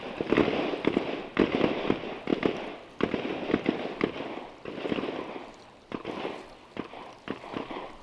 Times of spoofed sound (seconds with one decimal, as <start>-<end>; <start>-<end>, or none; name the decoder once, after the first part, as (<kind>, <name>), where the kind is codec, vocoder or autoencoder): none